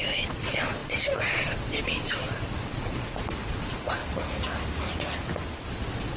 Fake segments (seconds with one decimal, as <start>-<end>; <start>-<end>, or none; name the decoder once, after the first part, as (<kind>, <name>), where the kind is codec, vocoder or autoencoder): 0.0-4.0 (vocoder, Vocos); 5.7-6.2